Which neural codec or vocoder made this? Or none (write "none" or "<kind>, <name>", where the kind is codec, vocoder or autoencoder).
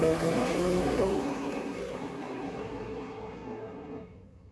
codec, SNAC